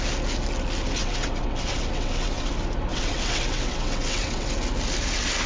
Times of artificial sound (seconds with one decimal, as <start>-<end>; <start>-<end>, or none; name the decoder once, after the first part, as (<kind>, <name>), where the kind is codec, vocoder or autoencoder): 1.0-2.5 (vocoder, WaveNeXt); 2.9-4.5